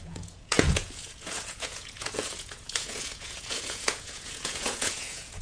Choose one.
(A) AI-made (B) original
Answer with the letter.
A